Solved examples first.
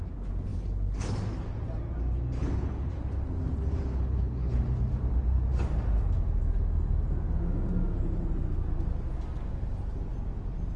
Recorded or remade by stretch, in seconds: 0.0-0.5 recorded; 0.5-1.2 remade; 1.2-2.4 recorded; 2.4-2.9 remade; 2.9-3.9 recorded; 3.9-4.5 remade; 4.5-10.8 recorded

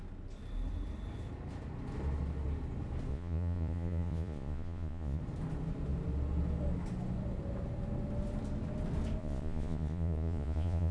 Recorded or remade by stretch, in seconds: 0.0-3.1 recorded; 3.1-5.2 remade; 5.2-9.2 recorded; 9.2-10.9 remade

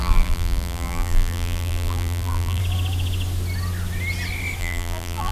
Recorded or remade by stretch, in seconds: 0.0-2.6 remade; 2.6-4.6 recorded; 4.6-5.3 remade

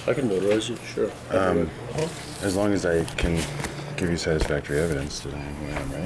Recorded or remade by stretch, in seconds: 0.0-6.1 recorded